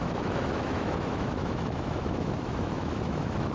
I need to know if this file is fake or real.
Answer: fake